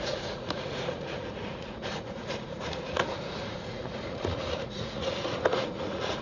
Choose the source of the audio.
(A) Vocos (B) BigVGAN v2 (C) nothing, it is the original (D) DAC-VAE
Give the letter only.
A